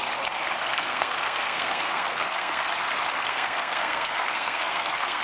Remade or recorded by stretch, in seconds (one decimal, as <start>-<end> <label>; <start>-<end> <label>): 0.0-0.7 recorded; 0.7-2.7 remade; 2.7-3.2 recorded; 3.2-5.2 remade